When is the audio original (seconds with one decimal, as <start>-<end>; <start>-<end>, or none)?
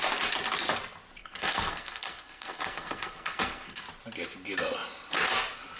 0.0-1.2; 3.8-5.8